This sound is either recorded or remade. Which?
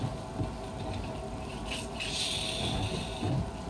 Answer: recorded